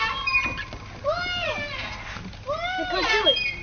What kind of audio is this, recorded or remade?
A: recorded